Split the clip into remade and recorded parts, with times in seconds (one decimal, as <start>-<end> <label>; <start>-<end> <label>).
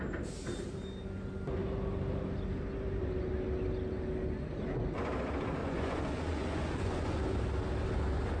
0.0-5.6 recorded; 5.6-7.2 remade; 7.2-8.4 recorded